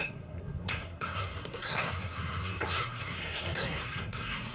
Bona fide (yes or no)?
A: no